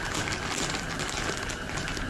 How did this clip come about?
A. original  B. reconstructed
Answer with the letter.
A